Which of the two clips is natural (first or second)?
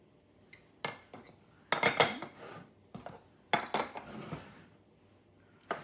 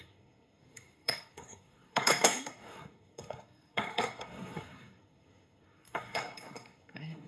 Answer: first